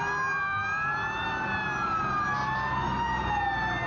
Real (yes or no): yes